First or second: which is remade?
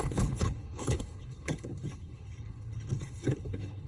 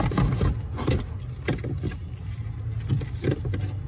first